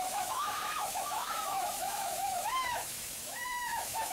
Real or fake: fake